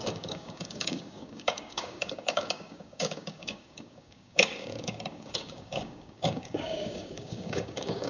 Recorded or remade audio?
remade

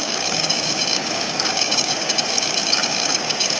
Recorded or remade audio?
remade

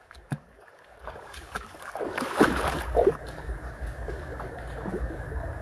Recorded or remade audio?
remade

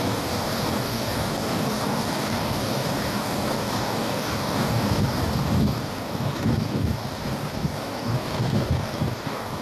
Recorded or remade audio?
remade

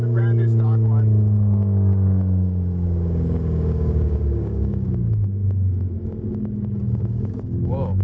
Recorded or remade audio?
remade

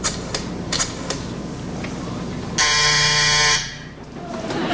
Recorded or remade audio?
recorded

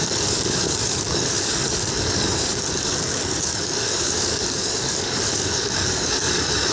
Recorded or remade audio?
remade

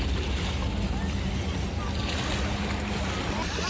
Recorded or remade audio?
recorded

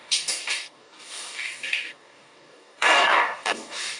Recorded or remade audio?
remade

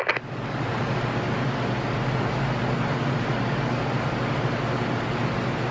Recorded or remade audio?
recorded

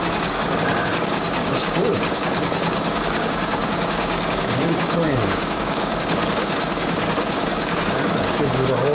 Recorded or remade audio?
remade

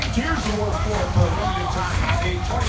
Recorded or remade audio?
remade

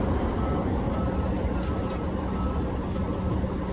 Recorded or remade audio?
recorded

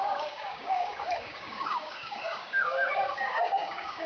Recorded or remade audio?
remade